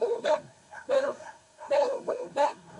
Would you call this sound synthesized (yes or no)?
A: yes